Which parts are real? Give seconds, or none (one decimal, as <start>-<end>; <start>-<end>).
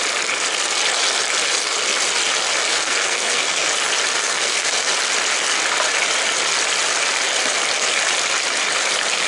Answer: 0.0-2.7; 3.7-4.2; 4.9-9.3